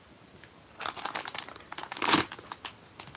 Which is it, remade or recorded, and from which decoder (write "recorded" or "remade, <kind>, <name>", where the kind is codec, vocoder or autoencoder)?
recorded